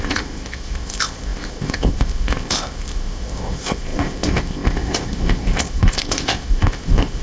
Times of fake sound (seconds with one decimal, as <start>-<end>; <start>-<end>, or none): 0.0-7.2